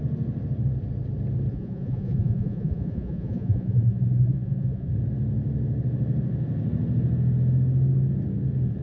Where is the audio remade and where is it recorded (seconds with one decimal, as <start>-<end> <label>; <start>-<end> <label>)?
0.0-1.5 recorded; 1.5-4.9 remade; 4.9-8.8 recorded